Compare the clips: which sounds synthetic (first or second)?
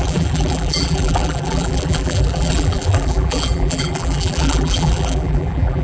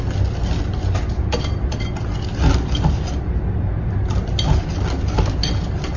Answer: first